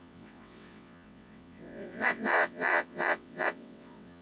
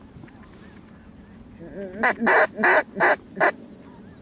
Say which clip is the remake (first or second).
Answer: first